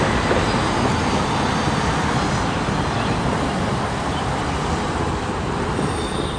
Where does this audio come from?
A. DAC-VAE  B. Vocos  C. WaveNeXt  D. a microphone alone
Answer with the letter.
D